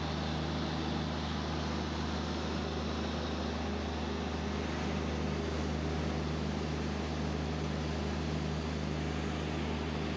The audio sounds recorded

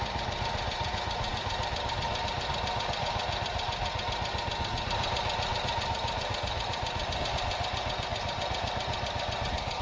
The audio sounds recorded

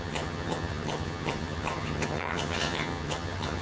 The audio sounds remade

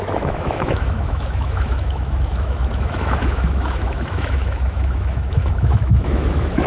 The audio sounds remade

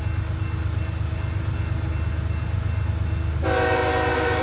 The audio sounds recorded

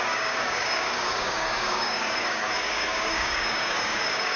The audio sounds remade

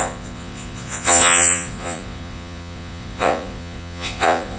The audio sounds remade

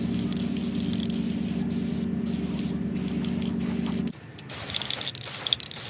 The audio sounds recorded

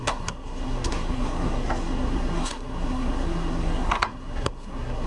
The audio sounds remade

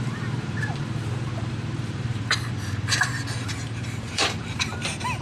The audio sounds remade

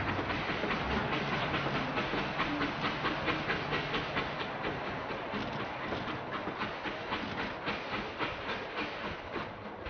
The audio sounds recorded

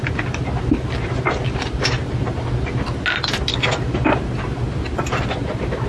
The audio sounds recorded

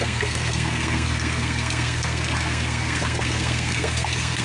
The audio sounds remade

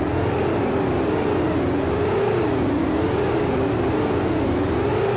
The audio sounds recorded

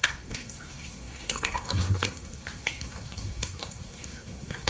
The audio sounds remade